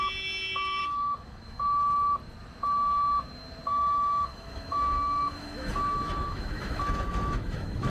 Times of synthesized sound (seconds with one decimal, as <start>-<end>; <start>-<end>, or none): 0.8-1.6; 3.7-7.9

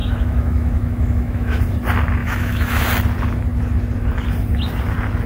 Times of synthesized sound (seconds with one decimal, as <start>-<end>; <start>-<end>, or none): 0.0-1.6; 2.2-2.9

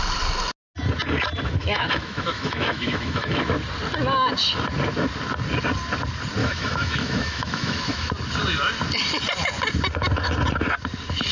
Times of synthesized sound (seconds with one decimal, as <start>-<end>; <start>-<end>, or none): 1.6-3.4; 6.4-8.1

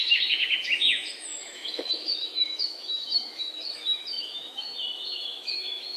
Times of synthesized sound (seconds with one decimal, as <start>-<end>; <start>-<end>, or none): 0.0-6.0

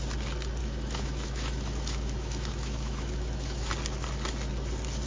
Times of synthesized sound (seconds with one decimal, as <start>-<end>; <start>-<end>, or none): 0.6-3.7